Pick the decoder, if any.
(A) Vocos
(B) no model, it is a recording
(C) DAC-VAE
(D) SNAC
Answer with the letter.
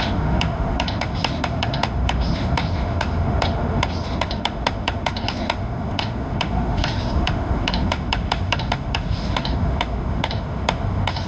C